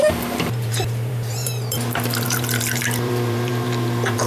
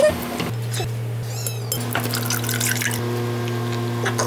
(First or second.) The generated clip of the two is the first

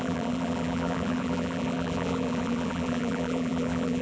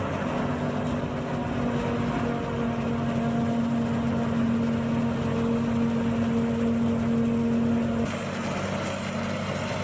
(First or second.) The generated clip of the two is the first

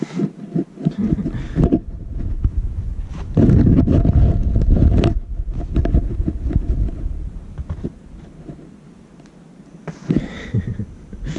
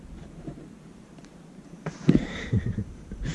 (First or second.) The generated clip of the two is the second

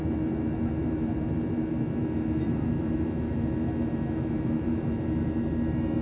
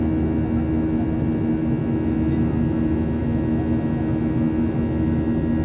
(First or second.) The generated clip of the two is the first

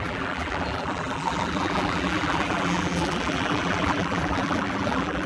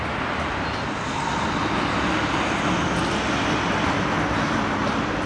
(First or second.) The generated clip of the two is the first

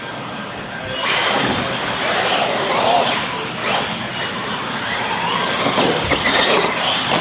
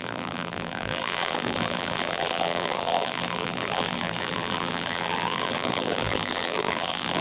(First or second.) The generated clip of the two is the second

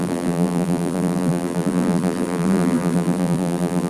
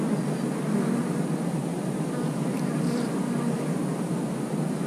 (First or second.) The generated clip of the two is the first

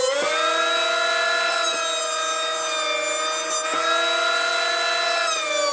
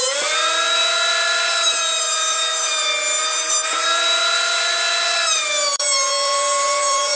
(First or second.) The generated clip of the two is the second